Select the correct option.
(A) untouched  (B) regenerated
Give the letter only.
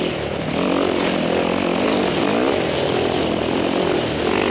A